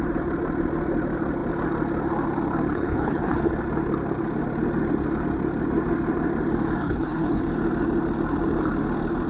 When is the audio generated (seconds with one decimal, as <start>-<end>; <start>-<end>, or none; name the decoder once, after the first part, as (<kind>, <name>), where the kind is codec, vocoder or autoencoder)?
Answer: 2.7-3.5 (codec, HILCodec); 6.8-7.4